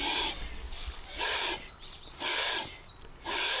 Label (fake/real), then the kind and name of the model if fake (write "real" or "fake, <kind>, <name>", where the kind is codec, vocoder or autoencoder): real